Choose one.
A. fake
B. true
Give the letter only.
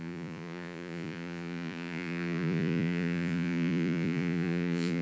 A